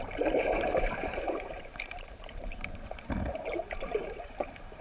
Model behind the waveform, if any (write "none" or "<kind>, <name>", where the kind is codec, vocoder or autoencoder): vocoder, BigVGAN v2